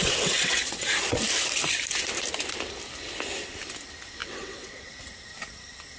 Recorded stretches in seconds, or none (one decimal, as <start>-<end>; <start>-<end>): 1.2-4.2; 5.0-6.0